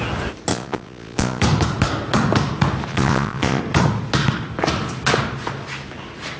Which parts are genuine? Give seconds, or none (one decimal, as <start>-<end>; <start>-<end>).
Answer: 0.0-0.5; 1.4-2.9; 3.6-6.4